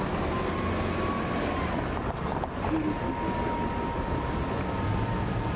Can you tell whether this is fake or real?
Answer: real